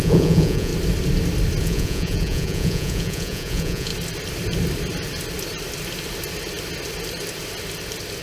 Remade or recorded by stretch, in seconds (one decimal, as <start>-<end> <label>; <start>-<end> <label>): 0.0-0.7 remade; 0.7-1.6 recorded; 1.6-3.9 remade; 3.9-8.2 recorded